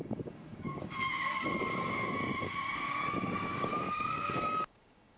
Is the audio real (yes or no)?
no